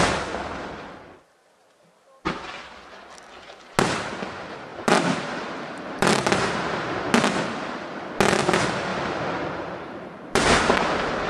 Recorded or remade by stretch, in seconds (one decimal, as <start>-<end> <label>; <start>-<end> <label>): 0.0-4.7 recorded; 4.7-6.6 remade; 6.6-8.9 recorded; 8.9-10.6 remade; 10.6-11.3 recorded